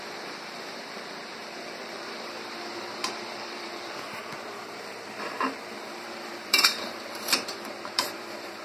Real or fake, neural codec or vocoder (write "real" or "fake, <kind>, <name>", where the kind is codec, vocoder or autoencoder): fake, vocoder, BigVGAN v2